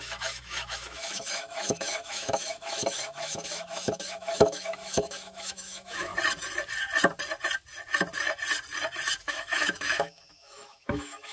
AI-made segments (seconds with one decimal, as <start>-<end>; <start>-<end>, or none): 0.0-6.1; 9.2-11.3